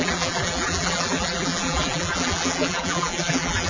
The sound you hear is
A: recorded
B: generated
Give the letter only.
B